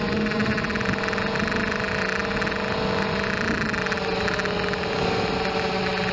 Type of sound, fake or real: real